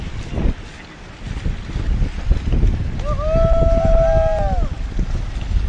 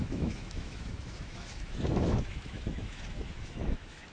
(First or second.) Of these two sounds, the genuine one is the first